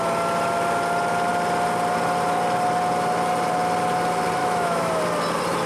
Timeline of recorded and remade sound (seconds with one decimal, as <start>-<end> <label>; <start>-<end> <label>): 0.0-4.4 recorded; 4.4-5.0 remade; 5.0-5.7 recorded

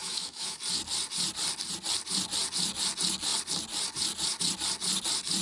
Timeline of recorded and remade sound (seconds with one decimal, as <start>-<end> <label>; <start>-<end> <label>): 0.0-0.6 remade; 0.6-5.4 recorded

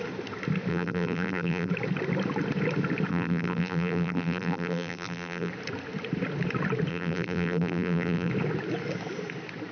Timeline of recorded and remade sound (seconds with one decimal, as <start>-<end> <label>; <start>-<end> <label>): 0.0-0.7 recorded; 0.7-1.7 remade; 1.7-3.1 recorded; 3.1-5.5 remade; 5.5-6.9 recorded; 6.9-8.3 remade; 8.3-9.7 recorded

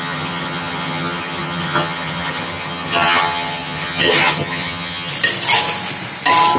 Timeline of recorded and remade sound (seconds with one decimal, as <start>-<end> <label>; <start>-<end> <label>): 0.0-5.1 remade; 5.1-6.6 recorded

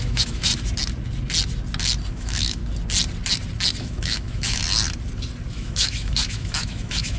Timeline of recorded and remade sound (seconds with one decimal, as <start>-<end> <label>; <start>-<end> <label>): 0.0-0.5 remade; 0.5-2.1 recorded; 2.1-2.6 remade; 2.6-3.8 recorded; 3.8-4.6 remade; 4.6-5.5 recorded; 5.5-7.2 remade

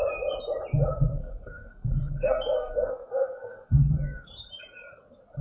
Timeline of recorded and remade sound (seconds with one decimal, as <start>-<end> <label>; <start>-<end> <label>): 0.0-1.1 recorded; 1.1-4.3 remade; 4.3-5.4 recorded

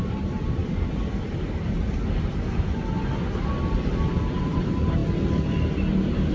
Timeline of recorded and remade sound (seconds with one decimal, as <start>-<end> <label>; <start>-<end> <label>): 0.0-0.6 remade; 0.6-4.4 recorded; 4.4-5.0 remade; 5.0-6.3 recorded

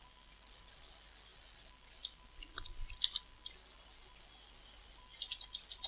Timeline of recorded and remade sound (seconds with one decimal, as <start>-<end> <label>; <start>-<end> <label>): 0.0-5.9 recorded